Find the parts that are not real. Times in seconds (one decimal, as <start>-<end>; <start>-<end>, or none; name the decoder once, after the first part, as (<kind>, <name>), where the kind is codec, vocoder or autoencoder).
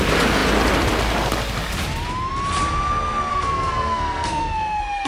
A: 3.3-5.1 (codec, SNAC)